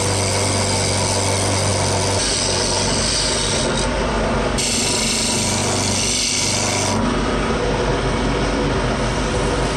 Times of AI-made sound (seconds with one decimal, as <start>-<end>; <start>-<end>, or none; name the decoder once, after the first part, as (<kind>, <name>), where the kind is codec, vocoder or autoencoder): none